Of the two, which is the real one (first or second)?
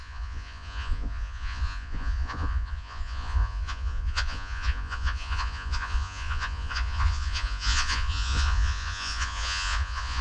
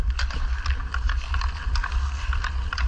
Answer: second